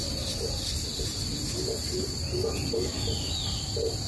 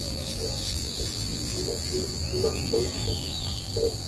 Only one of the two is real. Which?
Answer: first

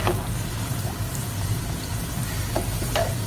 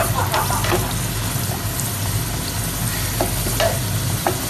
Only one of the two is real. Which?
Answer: second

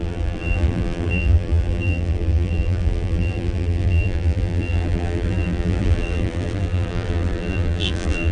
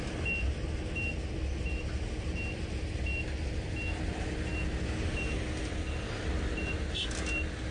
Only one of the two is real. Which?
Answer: second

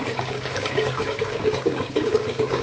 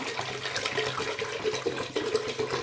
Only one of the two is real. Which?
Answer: second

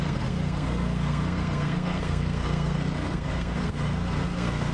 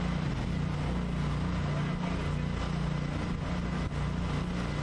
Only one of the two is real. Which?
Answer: second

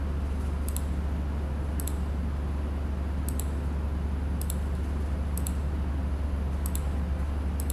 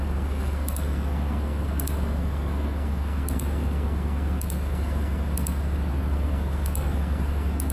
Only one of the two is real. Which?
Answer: first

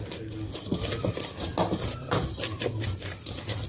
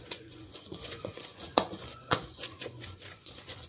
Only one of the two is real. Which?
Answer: first